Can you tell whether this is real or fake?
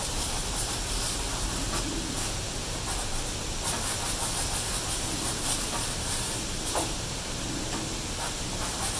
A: real